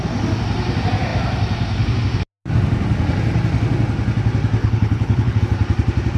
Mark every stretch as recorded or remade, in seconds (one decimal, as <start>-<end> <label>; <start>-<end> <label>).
0.0-4.6 recorded; 4.6-5.4 remade; 5.4-6.2 recorded